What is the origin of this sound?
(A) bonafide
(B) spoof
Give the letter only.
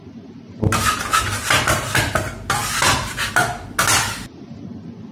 A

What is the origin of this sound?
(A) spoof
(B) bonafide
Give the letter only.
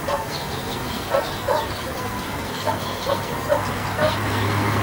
A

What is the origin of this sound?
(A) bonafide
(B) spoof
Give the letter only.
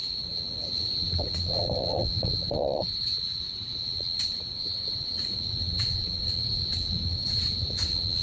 B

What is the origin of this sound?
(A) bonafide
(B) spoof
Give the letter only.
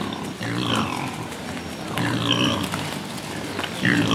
A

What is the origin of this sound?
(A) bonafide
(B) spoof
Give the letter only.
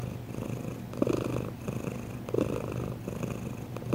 A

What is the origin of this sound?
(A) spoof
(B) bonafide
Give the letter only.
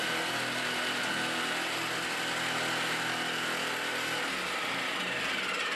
B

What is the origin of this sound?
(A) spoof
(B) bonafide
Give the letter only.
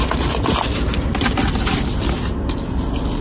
B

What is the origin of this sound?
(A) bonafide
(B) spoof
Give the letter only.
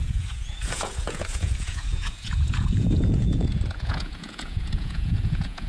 B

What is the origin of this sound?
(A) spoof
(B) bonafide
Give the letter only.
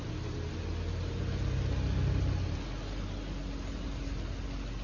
B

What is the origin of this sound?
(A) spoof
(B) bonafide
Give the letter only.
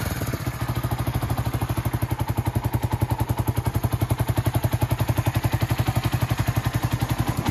B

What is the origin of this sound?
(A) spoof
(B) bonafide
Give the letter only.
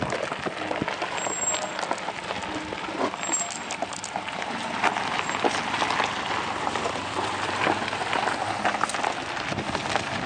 B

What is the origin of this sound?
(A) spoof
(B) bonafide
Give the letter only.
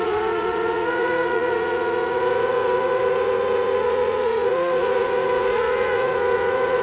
A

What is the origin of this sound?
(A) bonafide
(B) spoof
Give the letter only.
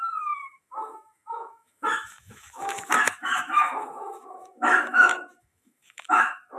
B